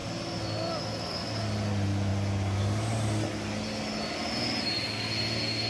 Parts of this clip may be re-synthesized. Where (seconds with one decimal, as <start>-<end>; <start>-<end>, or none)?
none